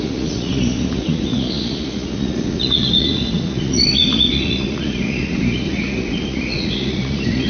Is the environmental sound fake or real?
fake